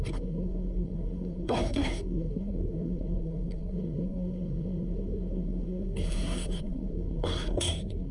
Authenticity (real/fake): fake